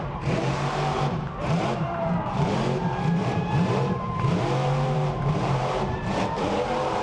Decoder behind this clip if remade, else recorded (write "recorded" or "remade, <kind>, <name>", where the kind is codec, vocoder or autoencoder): remade, vocoder, BigVGAN v2